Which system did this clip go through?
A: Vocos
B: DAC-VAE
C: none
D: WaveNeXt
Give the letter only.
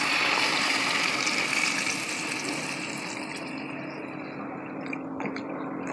C